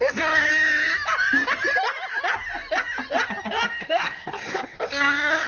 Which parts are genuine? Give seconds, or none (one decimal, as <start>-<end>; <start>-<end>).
0.5-3.8

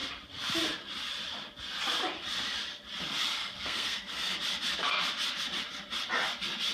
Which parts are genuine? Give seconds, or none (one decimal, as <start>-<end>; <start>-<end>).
0.0-3.4; 4.4-6.7

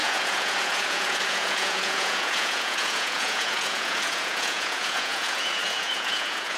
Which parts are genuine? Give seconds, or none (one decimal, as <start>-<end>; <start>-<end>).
none

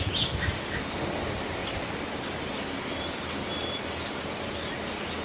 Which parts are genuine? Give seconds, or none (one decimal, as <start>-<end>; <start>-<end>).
0.0-5.2

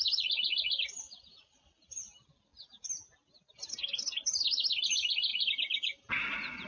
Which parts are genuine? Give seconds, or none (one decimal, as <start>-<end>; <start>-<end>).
0.0-6.7

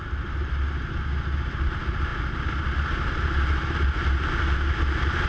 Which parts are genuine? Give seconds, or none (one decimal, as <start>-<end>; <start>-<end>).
0.0-5.3

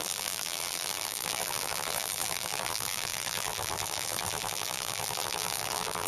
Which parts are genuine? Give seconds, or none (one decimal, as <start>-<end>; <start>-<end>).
none

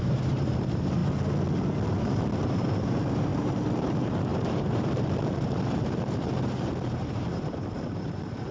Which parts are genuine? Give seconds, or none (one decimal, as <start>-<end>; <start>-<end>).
1.0-2.0